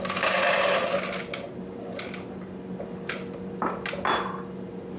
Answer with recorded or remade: recorded